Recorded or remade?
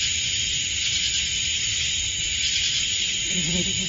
recorded